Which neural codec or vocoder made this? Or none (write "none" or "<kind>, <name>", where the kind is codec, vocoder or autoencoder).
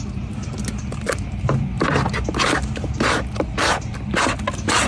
none